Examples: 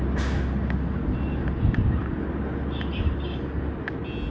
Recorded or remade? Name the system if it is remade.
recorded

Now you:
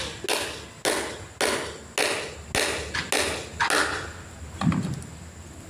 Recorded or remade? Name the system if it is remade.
recorded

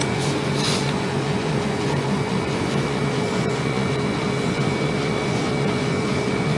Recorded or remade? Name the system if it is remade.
remade, vocoder, Vocos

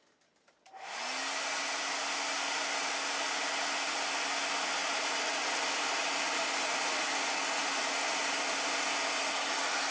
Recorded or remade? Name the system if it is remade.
recorded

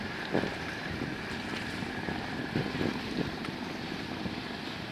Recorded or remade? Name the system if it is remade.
recorded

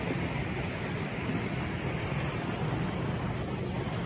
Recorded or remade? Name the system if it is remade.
recorded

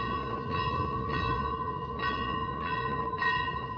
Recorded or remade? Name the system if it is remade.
remade, vocoder, Vocos